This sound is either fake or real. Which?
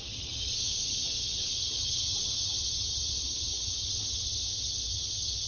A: fake